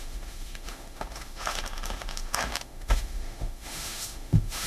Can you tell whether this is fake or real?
fake